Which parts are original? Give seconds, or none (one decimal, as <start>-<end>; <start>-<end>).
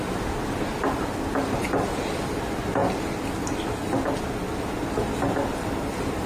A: 0.0-6.3